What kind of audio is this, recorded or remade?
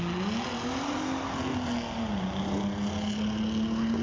recorded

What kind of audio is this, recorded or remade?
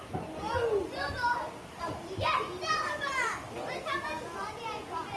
recorded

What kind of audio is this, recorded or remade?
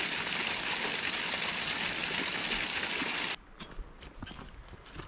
recorded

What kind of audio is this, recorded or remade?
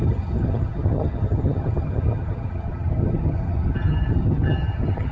remade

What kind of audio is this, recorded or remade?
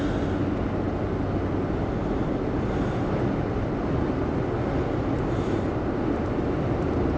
recorded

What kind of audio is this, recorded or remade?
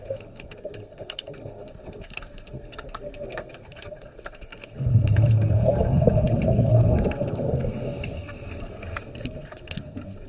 remade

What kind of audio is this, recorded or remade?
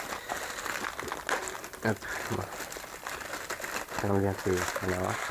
recorded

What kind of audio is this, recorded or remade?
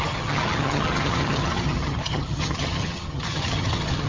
remade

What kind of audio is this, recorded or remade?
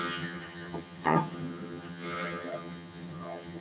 remade